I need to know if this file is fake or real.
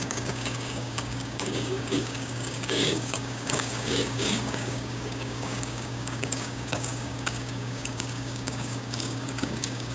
fake